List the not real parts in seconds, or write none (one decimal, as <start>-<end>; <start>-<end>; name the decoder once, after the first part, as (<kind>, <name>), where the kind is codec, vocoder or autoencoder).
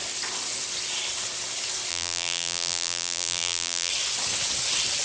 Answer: 1.9-3.9 (vocoder, BigVGAN v2)